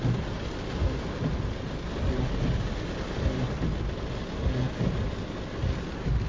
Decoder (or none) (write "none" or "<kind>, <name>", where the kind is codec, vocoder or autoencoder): none